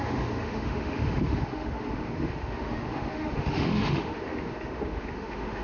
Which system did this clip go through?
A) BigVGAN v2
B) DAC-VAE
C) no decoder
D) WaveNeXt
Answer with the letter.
B